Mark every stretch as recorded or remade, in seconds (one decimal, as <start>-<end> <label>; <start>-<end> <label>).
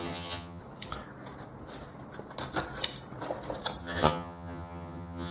0.0-0.6 remade; 0.6-3.8 recorded; 3.8-5.3 remade